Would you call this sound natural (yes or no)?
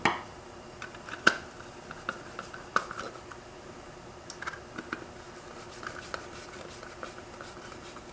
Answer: yes